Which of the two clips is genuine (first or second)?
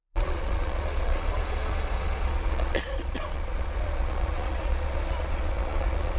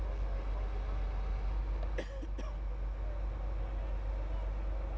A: second